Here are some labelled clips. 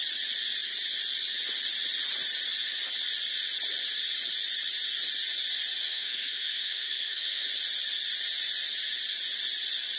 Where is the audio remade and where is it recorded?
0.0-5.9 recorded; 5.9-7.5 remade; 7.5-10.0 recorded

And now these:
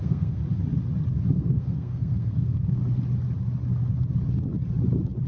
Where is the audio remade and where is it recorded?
0.0-0.4 remade; 0.4-1.3 recorded; 1.3-2.8 remade; 2.8-5.3 recorded

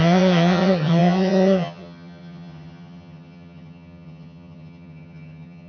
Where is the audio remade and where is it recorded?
0.0-5.7 remade

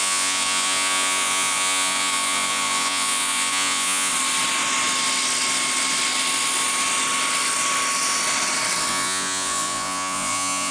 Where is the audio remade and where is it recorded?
0.0-4.1 remade; 4.1-8.9 recorded; 8.9-10.7 remade

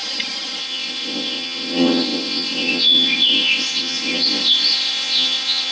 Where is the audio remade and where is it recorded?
0.0-0.6 recorded; 0.6-5.7 remade

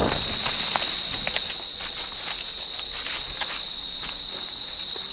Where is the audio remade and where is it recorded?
0.0-5.1 recorded

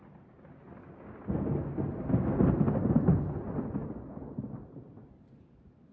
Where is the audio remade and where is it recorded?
0.0-5.9 recorded

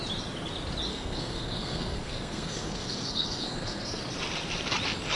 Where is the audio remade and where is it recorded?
0.0-0.9 recorded; 0.9-4.0 remade; 4.0-5.2 recorded